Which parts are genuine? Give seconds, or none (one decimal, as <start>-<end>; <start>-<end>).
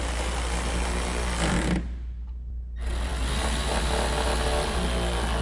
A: 0.0-5.4